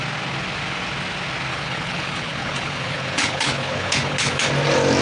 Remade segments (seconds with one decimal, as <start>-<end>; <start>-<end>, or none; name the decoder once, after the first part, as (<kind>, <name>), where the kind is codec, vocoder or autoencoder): 1.5-4.5 (codec, HILCodec)